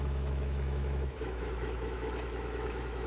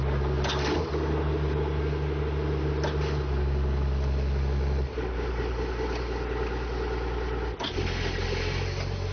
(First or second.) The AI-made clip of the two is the first